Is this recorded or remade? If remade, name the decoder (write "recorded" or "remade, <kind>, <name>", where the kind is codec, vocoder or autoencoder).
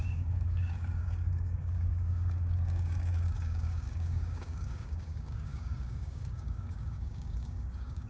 remade, codec, DAC